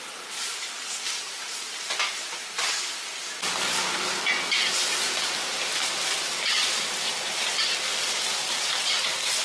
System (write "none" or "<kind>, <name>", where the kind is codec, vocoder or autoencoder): vocoder, BigVGAN v2